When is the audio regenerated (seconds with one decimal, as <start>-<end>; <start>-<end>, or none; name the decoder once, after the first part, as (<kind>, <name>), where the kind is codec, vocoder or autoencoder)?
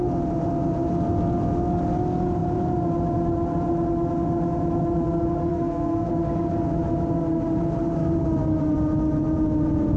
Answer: 5.5-6.1 (codec, SNAC)